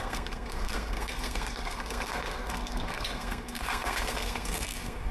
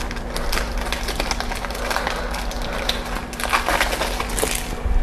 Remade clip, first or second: first